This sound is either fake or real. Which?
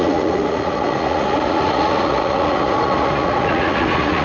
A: fake